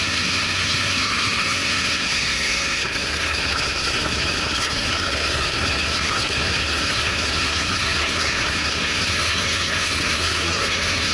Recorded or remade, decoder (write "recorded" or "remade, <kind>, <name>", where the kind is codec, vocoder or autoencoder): remade, codec, SNAC